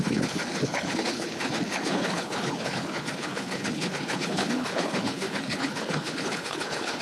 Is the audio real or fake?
fake